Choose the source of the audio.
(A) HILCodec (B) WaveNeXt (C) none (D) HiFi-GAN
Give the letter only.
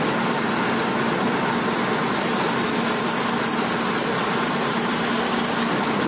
C